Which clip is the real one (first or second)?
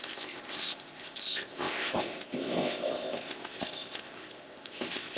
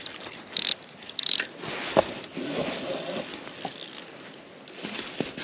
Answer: second